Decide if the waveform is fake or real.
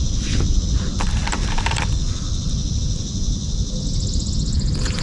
real